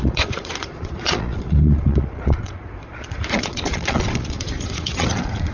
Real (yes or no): no